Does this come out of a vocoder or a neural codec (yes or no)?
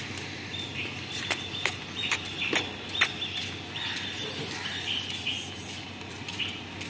no